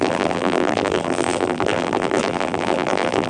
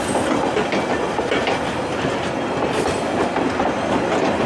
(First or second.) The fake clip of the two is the first